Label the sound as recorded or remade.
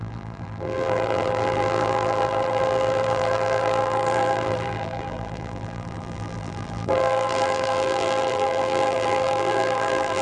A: remade